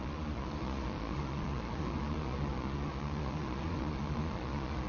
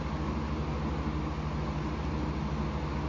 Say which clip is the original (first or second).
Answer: second